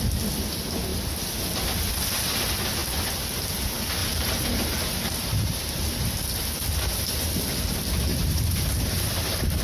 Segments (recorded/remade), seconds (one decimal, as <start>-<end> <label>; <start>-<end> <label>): 0.0-4.0 recorded; 4.0-6.0 remade; 6.0-8.1 recorded; 8.1-9.1 remade; 9.1-9.6 recorded